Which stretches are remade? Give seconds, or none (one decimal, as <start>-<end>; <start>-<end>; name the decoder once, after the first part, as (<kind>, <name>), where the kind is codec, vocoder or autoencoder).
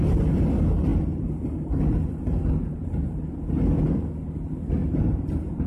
2.6-3.3 (vocoder, BigVGAN v2); 4.8-5.7